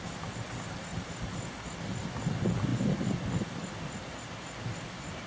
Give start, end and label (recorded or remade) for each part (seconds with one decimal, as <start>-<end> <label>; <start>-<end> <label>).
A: 0.0-5.3 recorded